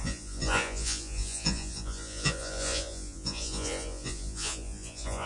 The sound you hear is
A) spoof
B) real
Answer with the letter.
A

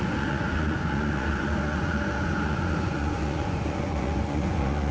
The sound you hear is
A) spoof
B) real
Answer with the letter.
A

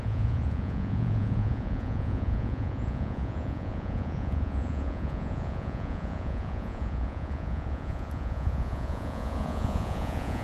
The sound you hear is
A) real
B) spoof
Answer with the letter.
B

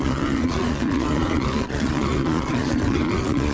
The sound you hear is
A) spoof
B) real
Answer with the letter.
A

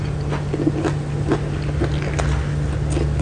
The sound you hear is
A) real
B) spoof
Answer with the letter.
A